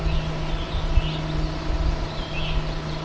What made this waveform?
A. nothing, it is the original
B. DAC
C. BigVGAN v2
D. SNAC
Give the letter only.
A